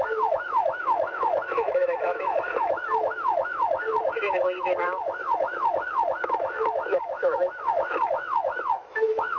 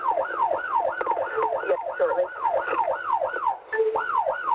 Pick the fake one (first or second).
first